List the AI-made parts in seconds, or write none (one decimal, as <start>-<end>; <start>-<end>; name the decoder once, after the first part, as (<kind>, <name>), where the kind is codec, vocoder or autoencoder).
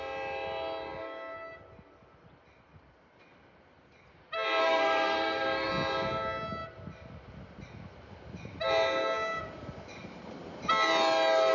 4.6-5.7 (codec, SNAC)